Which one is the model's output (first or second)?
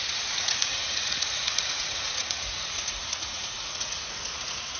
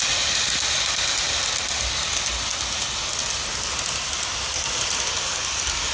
first